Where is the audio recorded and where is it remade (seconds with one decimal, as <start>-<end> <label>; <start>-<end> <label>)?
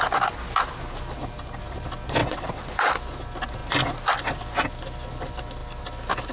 0.0-2.2 recorded; 2.2-2.9 remade; 2.9-6.3 recorded